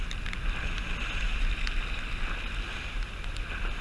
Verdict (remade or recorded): recorded